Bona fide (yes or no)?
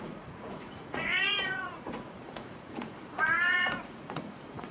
no